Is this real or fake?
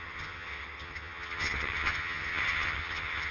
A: fake